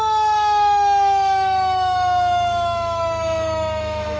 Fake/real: fake